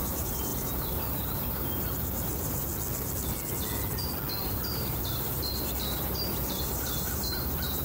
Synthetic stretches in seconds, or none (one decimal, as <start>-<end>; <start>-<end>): 0.0-2.7; 4.4-7.8